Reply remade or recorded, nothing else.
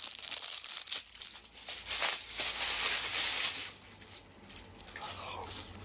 recorded